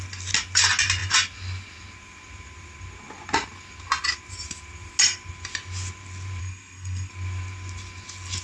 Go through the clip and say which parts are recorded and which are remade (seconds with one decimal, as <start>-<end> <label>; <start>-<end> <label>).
0.0-6.4 recorded; 6.4-7.1 remade; 7.1-8.4 recorded